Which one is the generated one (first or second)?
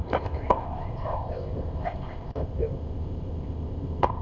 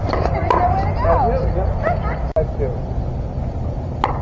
first